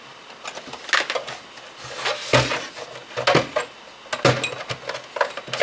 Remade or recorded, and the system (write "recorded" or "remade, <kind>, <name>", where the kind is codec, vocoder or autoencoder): recorded